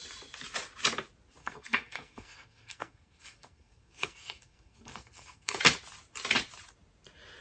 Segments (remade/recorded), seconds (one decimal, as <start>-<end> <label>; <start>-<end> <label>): 0.0-1.4 recorded; 1.4-5.6 remade; 5.6-7.4 recorded